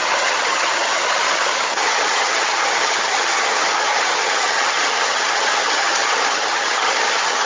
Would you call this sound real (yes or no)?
no